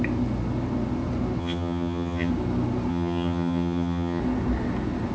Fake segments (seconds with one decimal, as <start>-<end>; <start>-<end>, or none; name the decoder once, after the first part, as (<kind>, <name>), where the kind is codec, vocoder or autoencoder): 1.4-2.3 (vocoder, HiFi-GAN); 2.9-4.2